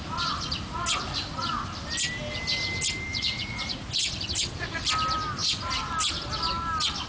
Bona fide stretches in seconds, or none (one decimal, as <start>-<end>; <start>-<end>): 0.0-3.1; 3.9-5.4; 5.9-7.1

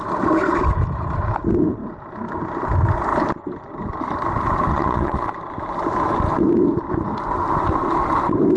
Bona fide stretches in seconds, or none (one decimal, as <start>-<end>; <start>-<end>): 0.0-4.7; 5.3-8.6